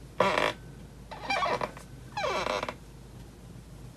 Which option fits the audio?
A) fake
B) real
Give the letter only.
B